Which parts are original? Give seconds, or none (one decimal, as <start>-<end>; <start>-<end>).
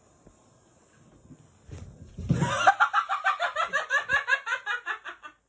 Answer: 0.0-5.5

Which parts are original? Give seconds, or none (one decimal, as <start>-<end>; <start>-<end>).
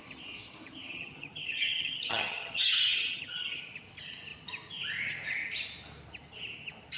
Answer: 0.0-0.9; 3.6-7.0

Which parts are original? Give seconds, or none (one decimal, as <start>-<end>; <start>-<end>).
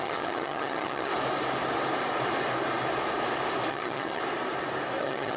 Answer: 1.1-3.7; 4.2-5.0